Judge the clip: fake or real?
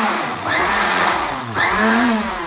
fake